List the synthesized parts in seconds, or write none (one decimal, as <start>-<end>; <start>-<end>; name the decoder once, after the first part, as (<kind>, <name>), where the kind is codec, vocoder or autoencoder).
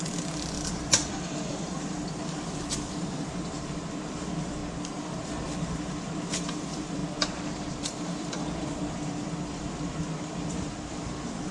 0.0-4.6 (vocoder, BigVGAN v2); 5.2-7.0; 7.7-11.5